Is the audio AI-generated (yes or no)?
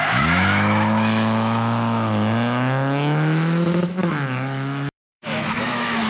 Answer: yes